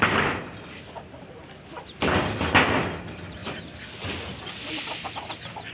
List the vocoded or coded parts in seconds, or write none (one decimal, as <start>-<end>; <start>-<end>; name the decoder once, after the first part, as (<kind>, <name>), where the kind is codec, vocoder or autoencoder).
none

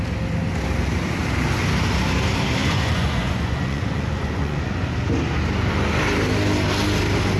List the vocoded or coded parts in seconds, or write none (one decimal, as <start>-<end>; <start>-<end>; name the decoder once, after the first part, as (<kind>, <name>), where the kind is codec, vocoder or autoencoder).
2.6-4.9 (vocoder, Vocos)

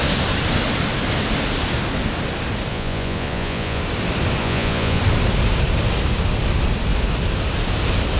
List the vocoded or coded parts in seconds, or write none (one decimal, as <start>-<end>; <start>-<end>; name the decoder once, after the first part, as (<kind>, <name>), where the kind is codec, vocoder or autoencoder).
2.7-3.8 (vocoder, Vocos); 4.4-5.0

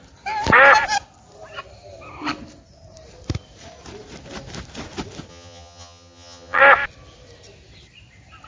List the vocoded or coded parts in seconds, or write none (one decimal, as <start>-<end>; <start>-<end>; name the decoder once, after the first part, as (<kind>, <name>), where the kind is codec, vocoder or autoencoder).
5.3-6.6 (vocoder, HiFi-GAN)

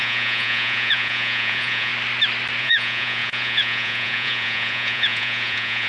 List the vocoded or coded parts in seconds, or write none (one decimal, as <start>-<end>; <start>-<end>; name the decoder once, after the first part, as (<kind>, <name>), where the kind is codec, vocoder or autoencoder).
0.0-1.9 (vocoder, Vocos); 2.6-5.9